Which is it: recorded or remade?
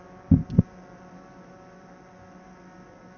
recorded